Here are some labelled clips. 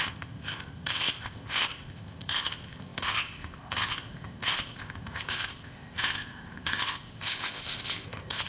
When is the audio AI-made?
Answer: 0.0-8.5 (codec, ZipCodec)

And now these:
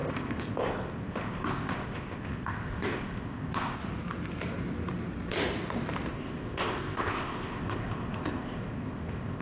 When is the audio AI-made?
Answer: 0.0-3.8 (codec, ZipCodec); 6.1-9.4

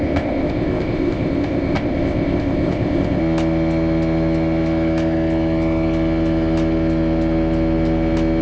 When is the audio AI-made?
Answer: 0.0-3.2 (codec, ZipCodec)

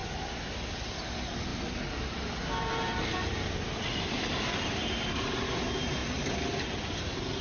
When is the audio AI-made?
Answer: none

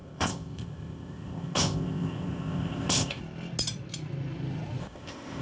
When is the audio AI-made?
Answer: 0.0-3.2 (codec, ZipCodec); 4.8-5.4

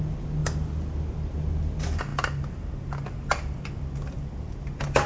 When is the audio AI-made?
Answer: none

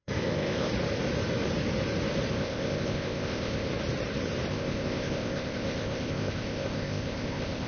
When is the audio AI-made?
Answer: 0.0-0.7 (codec, ZipCodec); 2.3-3.7; 4.5-7.7

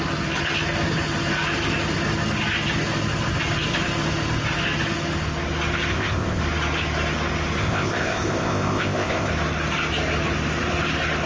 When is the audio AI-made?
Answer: 5.9-6.4 (codec, ZipCodec); 7.6-9.3